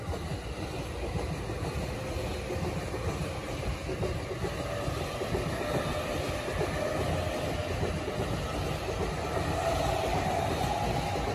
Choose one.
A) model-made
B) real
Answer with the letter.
B